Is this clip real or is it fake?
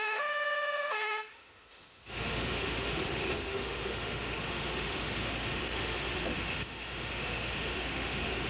fake